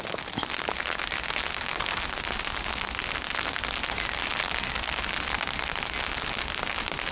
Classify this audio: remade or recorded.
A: recorded